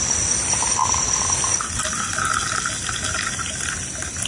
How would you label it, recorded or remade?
recorded